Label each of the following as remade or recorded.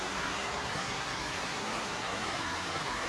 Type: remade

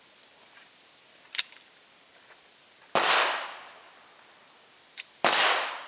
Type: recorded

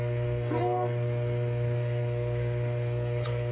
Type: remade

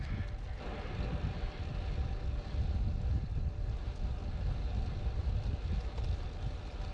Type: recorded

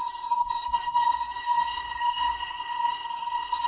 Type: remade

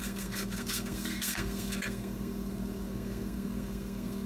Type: remade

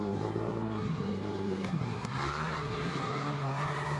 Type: remade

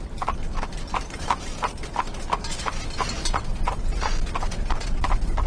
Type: recorded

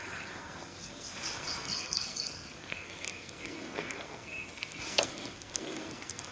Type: remade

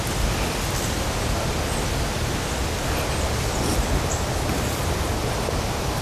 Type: recorded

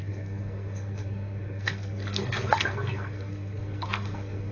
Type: remade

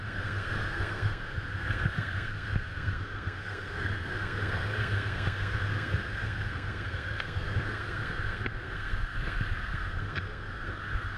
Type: remade